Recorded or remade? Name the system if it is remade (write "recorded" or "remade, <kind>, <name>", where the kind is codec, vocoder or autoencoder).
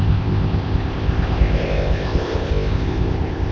remade, codec, ZipCodec